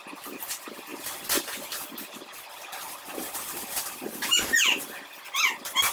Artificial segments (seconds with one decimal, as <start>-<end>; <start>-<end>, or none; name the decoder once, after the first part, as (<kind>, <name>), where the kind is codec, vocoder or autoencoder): none